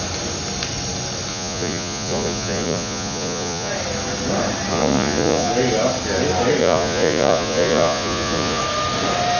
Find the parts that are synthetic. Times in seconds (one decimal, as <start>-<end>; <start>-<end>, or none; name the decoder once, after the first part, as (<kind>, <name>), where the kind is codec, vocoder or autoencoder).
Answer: 1.3-3.7 (vocoder, Vocos); 4.7-5.5; 6.6-8.6